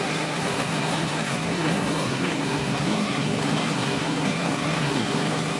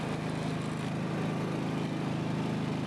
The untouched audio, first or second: second